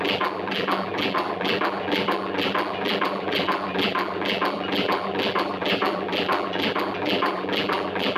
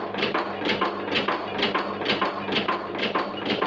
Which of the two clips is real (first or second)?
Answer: second